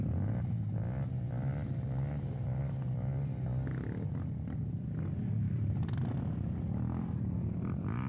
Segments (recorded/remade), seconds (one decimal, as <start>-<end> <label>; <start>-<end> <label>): 0.0-8.1 recorded